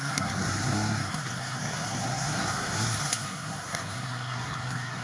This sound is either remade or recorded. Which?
remade